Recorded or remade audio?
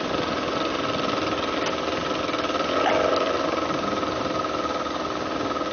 recorded